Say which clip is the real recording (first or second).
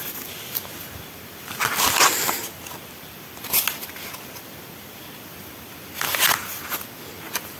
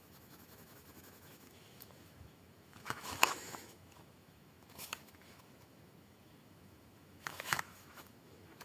first